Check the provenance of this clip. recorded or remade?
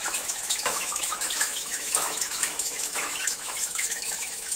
remade